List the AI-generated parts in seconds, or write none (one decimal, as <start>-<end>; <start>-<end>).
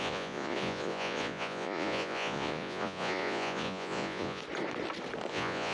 0.0-4.4; 5.3-5.7